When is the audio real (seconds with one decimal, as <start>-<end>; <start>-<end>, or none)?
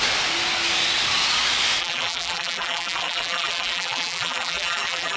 0.0-1.8